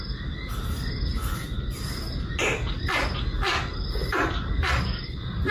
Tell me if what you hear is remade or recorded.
recorded